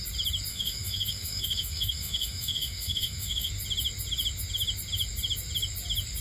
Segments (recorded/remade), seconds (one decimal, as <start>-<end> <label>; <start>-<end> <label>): 0.0-0.5 recorded; 0.5-3.5 remade; 3.5-6.2 recorded